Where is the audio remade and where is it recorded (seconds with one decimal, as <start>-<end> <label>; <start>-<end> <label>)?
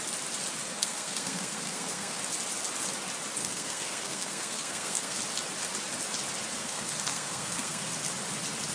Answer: 0.0-0.6 recorded; 0.6-2.2 remade; 2.2-3.4 recorded; 3.4-5.2 remade; 5.2-6.6 recorded; 6.6-7.9 remade; 7.9-8.7 recorded